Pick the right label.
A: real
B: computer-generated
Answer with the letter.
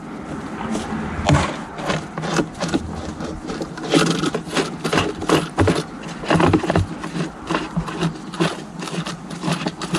A